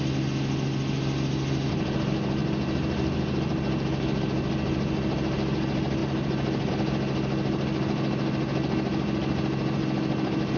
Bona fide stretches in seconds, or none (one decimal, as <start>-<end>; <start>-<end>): 0.0-10.6